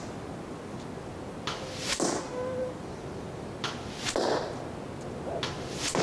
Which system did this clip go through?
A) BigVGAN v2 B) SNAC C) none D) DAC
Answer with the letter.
C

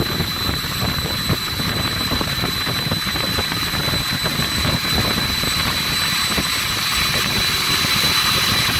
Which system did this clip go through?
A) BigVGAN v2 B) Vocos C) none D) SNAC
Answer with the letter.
A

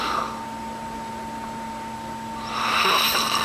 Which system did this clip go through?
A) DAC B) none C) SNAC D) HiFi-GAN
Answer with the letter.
B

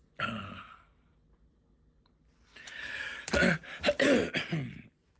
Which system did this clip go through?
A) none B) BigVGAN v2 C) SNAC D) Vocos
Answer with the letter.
A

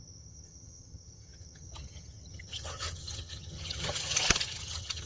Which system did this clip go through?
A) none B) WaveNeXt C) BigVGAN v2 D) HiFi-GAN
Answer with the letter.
D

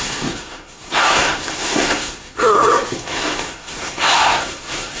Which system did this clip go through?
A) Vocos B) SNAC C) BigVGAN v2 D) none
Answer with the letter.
B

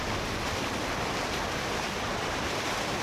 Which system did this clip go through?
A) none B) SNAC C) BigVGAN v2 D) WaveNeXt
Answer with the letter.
A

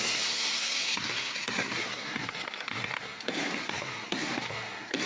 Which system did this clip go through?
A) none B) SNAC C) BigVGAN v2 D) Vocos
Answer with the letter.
B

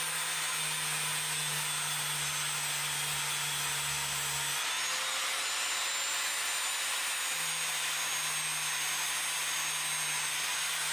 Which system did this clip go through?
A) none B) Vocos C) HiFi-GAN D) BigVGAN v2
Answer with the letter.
A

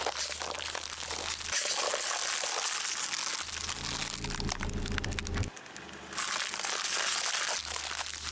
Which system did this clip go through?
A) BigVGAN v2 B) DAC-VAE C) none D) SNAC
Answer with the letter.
C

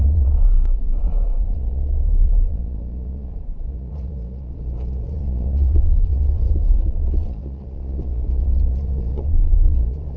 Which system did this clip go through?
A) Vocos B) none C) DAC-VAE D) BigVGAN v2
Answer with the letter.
A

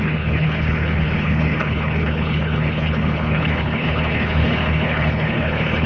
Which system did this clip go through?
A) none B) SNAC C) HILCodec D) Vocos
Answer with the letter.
C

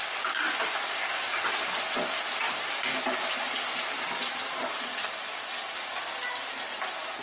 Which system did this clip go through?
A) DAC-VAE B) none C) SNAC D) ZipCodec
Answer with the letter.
B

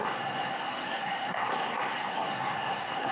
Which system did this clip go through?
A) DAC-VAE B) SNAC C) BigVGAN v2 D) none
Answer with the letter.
B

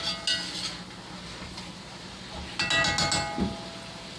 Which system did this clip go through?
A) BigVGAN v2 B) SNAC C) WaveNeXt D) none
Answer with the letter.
D